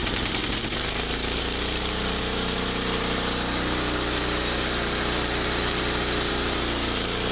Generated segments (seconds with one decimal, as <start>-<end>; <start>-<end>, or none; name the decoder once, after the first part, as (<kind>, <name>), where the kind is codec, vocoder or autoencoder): 0.0-7.3 (vocoder, BigVGAN v2)